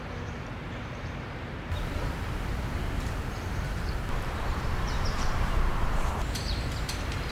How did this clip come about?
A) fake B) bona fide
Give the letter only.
A